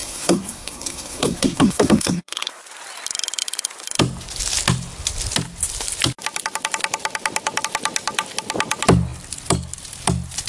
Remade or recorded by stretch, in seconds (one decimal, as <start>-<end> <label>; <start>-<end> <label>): 0.0-2.5 remade; 2.5-10.5 recorded